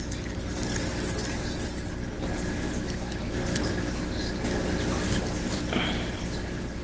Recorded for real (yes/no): yes